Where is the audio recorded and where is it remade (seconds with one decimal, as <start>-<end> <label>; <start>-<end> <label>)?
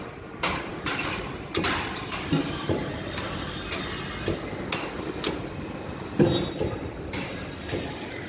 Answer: 0.0-8.3 recorded